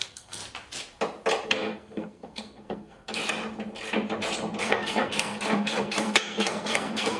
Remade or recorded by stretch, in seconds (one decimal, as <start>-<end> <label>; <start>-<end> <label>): 0.0-0.4 remade; 0.4-1.5 recorded; 1.5-3.2 remade; 3.2-4.6 recorded; 4.6-7.2 remade